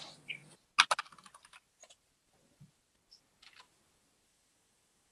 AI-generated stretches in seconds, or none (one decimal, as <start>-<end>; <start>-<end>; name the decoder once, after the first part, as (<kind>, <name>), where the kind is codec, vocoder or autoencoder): 0.0-0.4 (vocoder, BigVGAN v2); 2.0-5.1